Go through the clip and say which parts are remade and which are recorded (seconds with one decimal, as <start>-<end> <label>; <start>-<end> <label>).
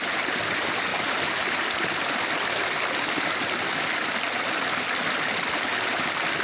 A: 0.0-0.9 recorded; 0.9-3.3 remade; 3.3-6.4 recorded